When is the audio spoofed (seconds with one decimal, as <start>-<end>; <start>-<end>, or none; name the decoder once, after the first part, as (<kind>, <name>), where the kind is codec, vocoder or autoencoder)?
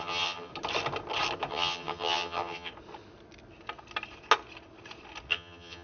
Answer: 0.0-0.5 (vocoder, HiFi-GAN); 1.5-2.7; 5.3-5.8